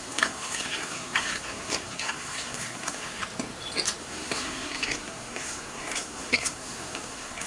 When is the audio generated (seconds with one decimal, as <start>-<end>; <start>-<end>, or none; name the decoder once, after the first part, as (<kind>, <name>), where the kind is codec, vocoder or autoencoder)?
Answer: 0.0-3.2 (codec, SNAC); 4.0-7.5